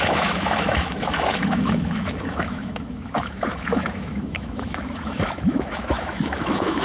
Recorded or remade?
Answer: remade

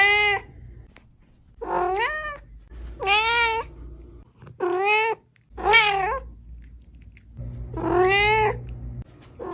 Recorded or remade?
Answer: recorded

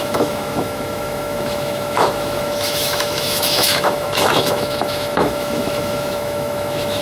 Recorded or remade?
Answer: remade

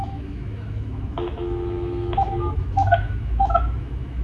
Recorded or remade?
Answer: remade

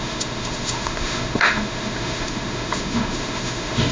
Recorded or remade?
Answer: remade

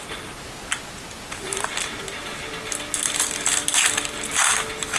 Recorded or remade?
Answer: recorded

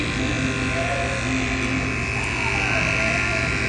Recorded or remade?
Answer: recorded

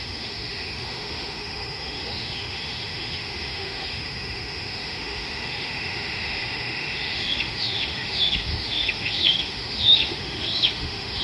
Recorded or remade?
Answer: remade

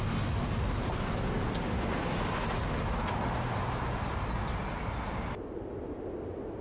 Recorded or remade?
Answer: recorded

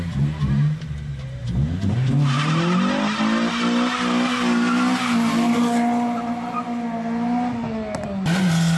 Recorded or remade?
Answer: recorded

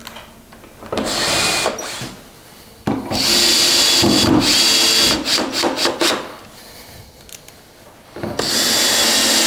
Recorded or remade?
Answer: recorded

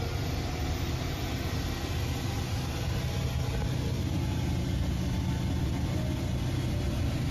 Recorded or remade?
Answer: recorded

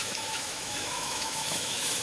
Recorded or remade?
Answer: remade